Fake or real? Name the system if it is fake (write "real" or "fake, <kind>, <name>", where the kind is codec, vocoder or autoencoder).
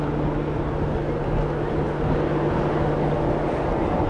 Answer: real